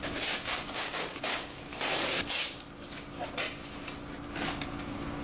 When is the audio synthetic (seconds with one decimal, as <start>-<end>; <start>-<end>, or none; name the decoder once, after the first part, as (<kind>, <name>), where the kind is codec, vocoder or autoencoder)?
0.0-1.7 (codec, DAC); 4.8-5.2